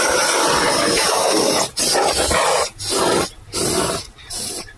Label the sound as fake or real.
real